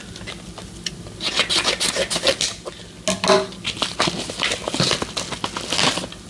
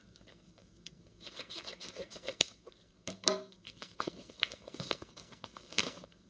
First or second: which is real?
first